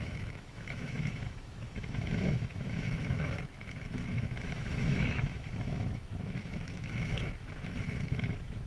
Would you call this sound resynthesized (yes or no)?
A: yes